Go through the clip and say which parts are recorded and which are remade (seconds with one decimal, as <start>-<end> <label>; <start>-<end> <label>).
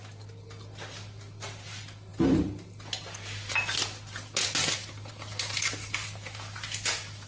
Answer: 0.0-7.3 recorded